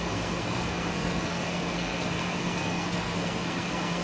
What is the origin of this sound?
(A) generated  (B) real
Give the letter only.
A